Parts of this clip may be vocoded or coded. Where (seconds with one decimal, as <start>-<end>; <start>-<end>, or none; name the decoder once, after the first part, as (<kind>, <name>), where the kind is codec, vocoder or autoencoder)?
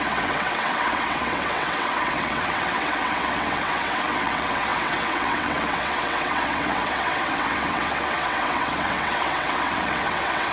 0.0-10.5 (vocoder, WaveNeXt)